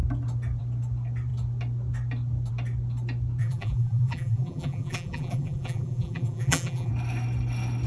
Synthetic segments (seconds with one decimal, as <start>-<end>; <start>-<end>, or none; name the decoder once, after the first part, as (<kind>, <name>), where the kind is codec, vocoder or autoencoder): 3.4-6.9 (vocoder, BigVGAN v2)